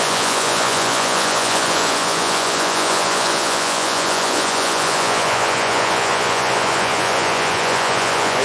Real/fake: fake